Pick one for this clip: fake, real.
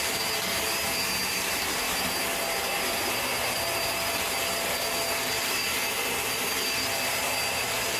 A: real